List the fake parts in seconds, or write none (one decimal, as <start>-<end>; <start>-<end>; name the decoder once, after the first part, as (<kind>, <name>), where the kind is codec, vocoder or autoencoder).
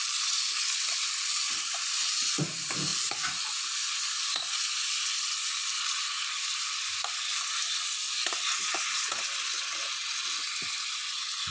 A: none